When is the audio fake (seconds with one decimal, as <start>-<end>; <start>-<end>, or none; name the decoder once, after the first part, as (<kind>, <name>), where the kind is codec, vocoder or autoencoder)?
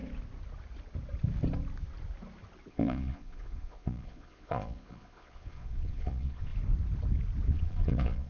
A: 2.7-6.5 (vocoder, Vocos); 7.5-8.3